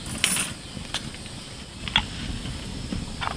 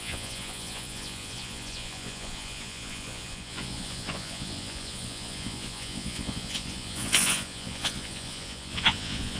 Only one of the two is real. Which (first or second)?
first